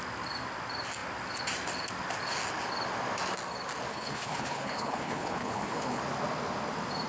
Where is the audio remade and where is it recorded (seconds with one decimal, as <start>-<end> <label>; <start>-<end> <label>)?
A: 0.0-3.9 recorded; 3.9-6.0 remade; 6.0-7.1 recorded